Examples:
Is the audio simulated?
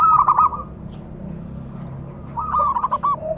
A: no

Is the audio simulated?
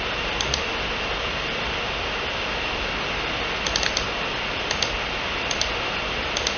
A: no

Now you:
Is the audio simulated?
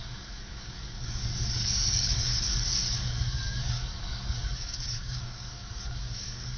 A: yes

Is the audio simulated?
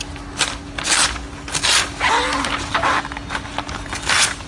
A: no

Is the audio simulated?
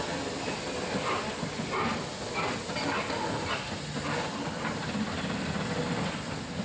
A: no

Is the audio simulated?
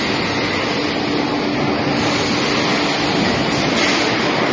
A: no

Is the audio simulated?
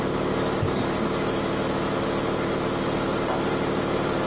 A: no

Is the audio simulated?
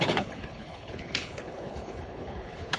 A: yes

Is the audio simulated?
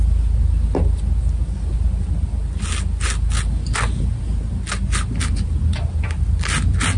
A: no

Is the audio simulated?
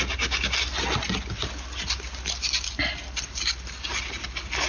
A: no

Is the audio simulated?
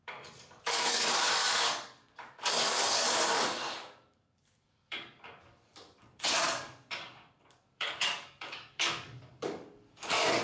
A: yes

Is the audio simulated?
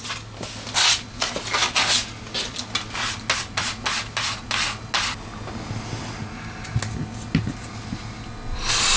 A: no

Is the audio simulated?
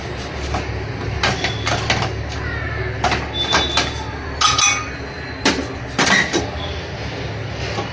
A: no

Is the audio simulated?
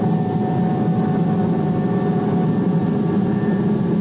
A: no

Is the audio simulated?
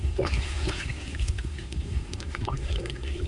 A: yes